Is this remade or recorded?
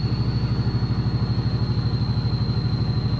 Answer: recorded